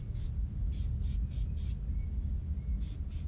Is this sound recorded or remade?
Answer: recorded